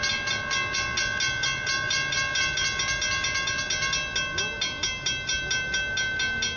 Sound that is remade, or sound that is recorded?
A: recorded